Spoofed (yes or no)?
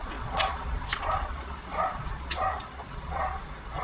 yes